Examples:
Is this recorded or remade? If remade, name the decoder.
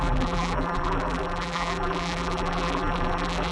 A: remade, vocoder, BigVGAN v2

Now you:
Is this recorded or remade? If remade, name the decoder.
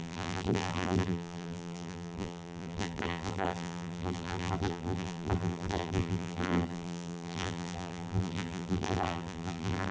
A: remade, vocoder, BigVGAN v2